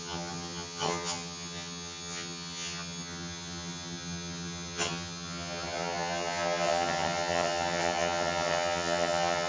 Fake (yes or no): yes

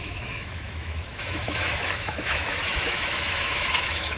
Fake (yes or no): yes